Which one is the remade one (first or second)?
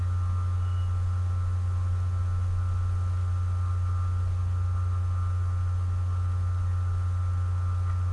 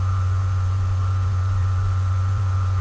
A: second